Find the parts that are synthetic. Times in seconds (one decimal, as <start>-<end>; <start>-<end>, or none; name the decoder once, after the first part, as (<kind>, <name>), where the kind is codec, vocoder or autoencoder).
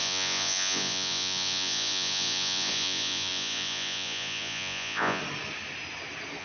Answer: 0.0-5.2 (vocoder, Vocos)